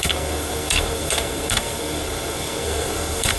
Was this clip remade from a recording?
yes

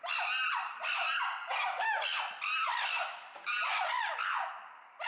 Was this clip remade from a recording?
no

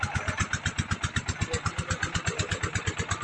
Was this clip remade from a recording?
no